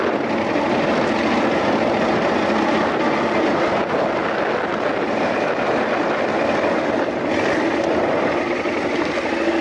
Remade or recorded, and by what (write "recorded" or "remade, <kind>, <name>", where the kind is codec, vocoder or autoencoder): recorded